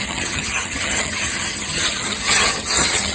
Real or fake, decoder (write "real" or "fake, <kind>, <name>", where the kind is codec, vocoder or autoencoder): fake, vocoder, HiFi-GAN